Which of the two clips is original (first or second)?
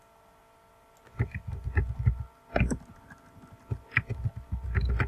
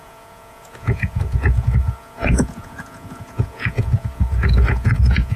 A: first